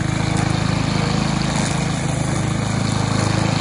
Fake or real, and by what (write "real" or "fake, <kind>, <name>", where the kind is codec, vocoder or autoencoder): real